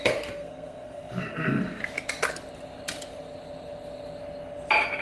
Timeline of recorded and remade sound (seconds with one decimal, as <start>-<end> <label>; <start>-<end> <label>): 0.0-1.8 remade; 1.8-5.0 recorded